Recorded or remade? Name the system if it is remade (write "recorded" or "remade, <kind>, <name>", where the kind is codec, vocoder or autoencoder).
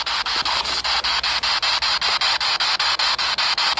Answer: recorded